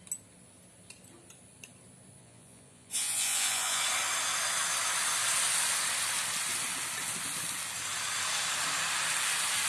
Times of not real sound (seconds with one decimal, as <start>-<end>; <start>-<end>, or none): 2.2-3.8